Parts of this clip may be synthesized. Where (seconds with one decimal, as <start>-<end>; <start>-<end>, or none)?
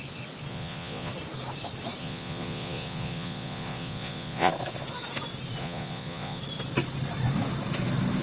0.5-1.1; 2.0-4.5; 5.6-6.4